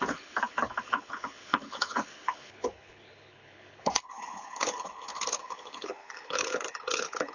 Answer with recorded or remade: remade